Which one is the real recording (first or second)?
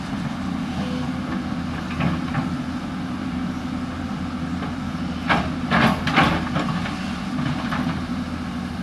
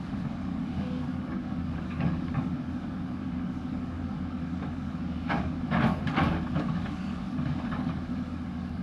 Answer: first